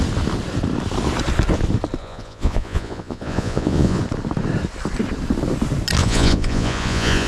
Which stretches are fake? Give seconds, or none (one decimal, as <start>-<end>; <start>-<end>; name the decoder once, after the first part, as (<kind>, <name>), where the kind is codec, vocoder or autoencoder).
2.0-4.0 (vocoder, Vocos); 6.0-7.3